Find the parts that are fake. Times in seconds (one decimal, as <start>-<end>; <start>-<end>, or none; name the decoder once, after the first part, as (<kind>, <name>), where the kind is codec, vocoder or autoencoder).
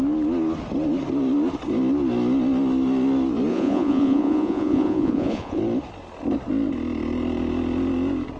3.5-5.6 (vocoder, Vocos)